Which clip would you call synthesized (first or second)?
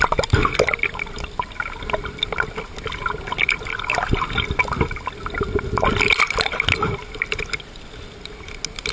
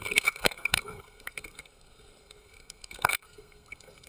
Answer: second